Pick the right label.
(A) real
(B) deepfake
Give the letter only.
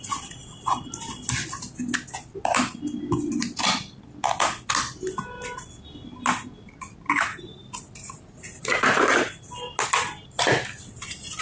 A